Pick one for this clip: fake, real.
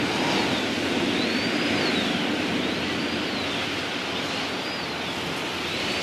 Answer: real